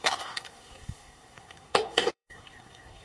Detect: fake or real fake